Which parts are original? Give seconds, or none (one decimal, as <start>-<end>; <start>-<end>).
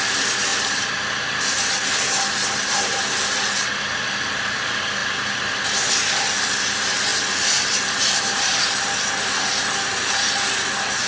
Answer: 0.0-11.1